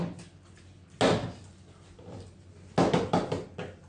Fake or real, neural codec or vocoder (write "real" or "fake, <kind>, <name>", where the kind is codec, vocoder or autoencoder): real